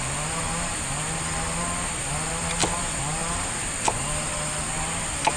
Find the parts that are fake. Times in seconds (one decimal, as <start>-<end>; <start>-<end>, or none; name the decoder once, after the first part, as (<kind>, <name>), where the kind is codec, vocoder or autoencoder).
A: none

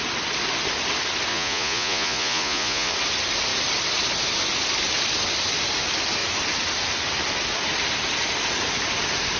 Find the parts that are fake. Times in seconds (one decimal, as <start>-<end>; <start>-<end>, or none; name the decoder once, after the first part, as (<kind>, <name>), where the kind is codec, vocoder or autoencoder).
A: 1.3-2.9 (vocoder, Vocos)

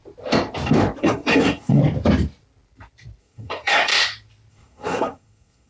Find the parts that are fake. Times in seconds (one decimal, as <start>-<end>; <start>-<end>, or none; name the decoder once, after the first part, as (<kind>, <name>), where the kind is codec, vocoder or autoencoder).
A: 1.0-1.8 (codec, SNAC); 3.2-3.9; 4.5-5.7

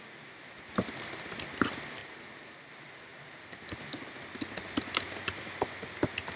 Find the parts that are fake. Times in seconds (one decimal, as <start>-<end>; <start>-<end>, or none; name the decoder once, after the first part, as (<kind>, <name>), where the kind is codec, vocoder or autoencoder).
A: none